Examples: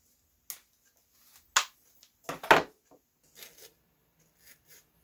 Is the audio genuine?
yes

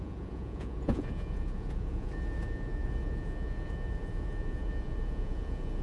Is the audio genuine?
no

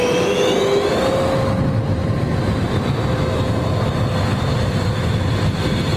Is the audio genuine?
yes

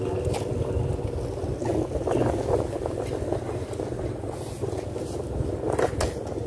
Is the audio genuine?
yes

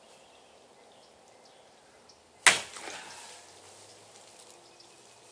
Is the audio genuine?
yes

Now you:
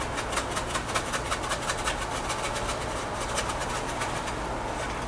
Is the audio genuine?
yes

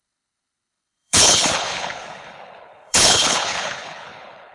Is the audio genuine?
no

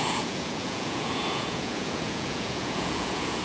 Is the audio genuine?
no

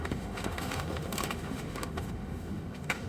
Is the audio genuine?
no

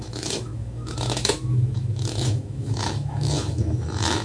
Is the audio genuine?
no